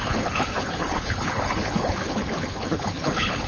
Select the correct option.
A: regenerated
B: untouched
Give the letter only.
A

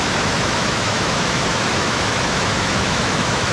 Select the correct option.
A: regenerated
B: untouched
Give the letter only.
A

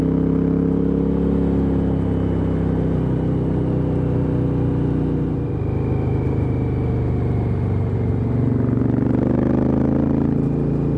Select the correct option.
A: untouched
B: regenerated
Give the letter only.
A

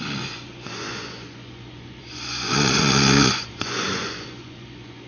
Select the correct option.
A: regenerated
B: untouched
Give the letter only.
A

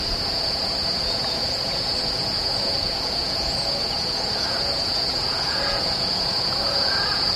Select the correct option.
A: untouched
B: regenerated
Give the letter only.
B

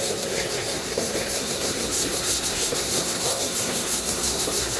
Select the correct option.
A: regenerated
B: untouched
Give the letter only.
A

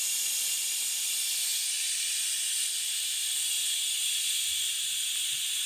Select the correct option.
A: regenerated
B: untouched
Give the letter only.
B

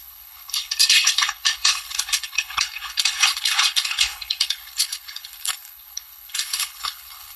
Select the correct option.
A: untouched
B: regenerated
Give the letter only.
B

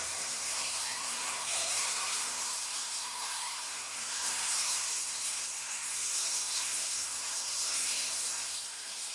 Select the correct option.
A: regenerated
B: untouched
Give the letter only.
A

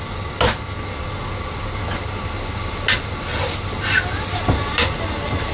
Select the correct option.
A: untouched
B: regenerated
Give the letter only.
A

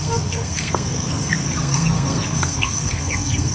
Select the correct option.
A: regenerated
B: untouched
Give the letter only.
A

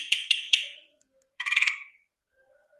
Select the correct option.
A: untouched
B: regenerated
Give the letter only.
B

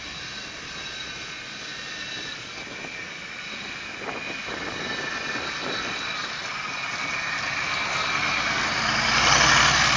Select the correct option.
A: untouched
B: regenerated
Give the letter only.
A